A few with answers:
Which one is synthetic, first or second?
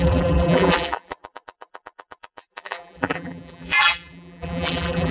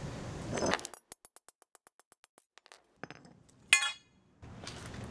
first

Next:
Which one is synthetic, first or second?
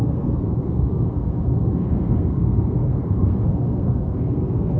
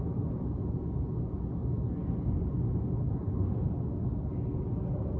first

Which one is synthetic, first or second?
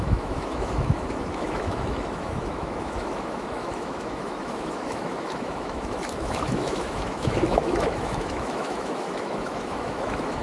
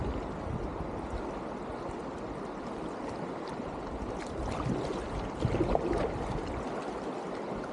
first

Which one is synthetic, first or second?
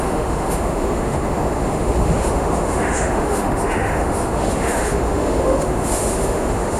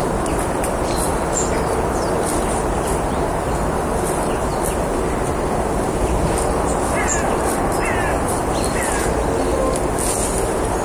first